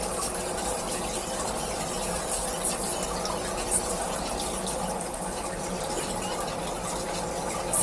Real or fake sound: real